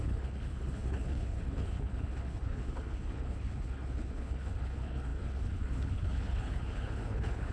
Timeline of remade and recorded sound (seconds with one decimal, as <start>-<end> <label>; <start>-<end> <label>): 0.0-7.5 remade